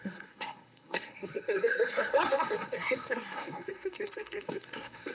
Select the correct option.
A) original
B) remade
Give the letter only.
B